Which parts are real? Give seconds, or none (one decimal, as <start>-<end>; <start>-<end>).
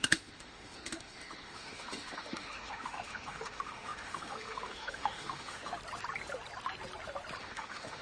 5.7-7.4